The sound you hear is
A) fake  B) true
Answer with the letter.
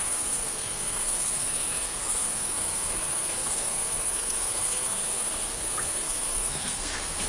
A